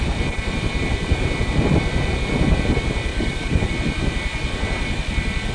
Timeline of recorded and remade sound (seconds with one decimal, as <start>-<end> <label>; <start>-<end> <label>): 0.0-3.1 recorded; 3.1-3.7 remade; 3.7-5.5 recorded